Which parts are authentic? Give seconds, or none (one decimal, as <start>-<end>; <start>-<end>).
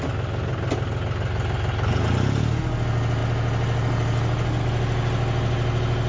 0.0-6.1